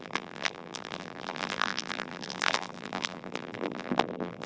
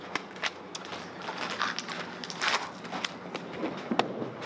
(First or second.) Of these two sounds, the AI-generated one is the first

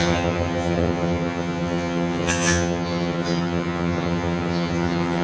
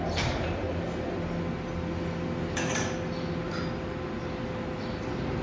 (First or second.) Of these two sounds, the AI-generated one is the first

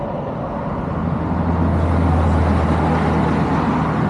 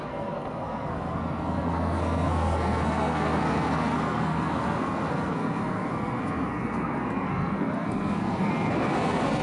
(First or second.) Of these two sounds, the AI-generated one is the second